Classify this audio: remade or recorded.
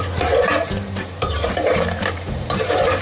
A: remade